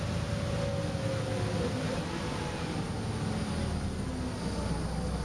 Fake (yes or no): no